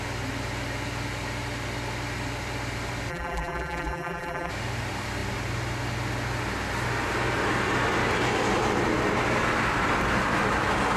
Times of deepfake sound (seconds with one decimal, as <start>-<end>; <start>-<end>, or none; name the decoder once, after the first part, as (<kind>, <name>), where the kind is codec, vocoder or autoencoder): 3.1-4.5 (vocoder, BigVGAN v2)